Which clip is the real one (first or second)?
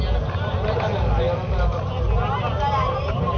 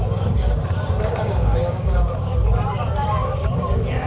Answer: first